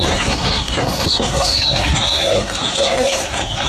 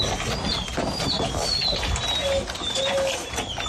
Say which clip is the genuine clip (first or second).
second